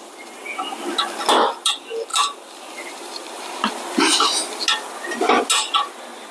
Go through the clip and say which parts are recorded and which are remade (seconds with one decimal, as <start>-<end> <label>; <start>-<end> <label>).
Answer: 0.0-2.1 recorded; 2.1-4.6 remade; 4.6-6.3 recorded